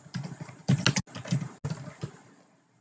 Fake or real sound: real